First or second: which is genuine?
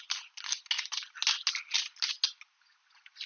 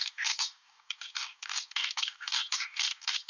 first